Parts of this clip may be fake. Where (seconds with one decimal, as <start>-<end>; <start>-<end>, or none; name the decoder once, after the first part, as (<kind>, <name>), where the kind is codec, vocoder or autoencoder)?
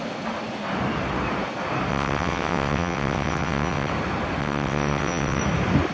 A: 1.9-3.9 (vocoder, WaveNeXt); 4.4-5.4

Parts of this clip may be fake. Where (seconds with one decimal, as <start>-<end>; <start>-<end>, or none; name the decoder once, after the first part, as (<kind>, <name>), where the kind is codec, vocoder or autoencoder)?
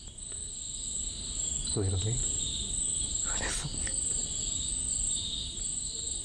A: none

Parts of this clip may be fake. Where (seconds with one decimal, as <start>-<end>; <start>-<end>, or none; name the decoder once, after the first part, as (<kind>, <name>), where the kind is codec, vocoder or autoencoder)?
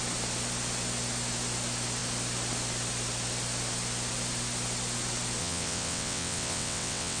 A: 5.4-7.2 (vocoder, WaveNeXt)